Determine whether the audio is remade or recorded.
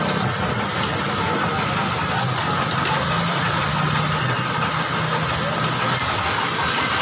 recorded